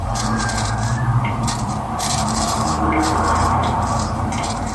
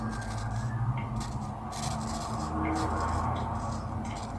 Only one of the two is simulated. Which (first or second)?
first